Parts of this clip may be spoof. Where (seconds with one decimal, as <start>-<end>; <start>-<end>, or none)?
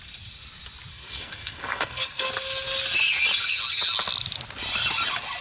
0.9-2.3